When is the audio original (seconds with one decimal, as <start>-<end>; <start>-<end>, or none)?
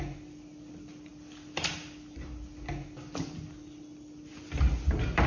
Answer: 0.0-5.3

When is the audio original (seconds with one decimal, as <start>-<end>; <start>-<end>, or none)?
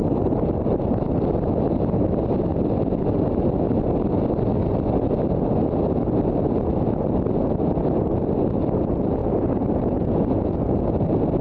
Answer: 0.0-9.2; 10.8-11.4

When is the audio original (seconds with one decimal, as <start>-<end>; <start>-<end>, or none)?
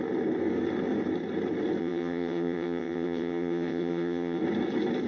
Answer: 0.0-1.8; 4.4-5.1